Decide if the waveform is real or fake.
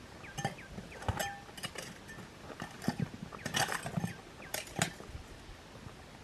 real